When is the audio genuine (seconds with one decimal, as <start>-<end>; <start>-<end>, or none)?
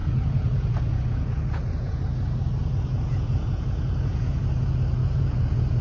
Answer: 2.0-2.6; 4.4-5.0